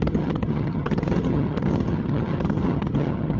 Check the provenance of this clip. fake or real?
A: fake